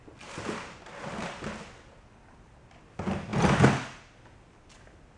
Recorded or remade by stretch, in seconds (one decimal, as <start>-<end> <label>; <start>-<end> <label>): 0.0-5.2 recorded